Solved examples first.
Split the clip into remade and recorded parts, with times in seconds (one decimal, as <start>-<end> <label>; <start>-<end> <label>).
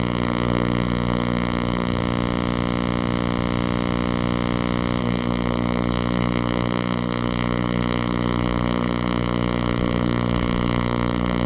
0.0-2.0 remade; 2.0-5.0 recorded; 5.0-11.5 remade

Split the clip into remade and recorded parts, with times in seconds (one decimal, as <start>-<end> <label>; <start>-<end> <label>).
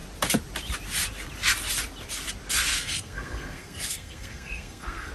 0.0-2.7 recorded; 2.7-5.1 remade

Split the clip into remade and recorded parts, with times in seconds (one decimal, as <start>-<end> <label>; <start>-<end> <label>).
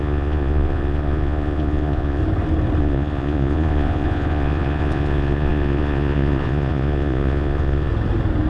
0.0-2.2 remade; 2.2-2.8 recorded; 2.8-7.9 remade; 7.9-8.5 recorded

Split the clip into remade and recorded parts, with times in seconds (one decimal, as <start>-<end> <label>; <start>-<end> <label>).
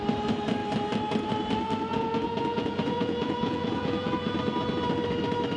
0.0-1.9 recorded; 1.9-4.1 remade; 4.1-5.6 recorded